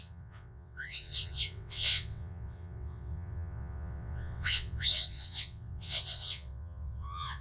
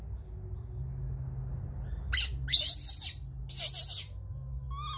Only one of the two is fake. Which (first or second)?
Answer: first